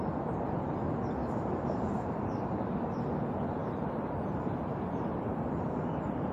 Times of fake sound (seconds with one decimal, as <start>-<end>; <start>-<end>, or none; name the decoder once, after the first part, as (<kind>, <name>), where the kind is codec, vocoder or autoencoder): 1.2-3.0 (vocoder, BigVGAN v2); 3.6-5.3